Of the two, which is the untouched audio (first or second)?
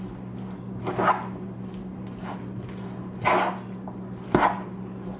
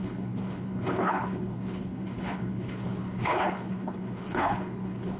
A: first